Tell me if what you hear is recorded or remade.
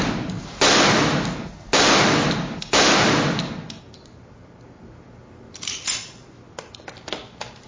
recorded